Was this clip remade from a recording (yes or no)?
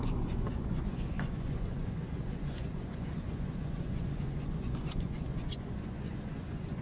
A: yes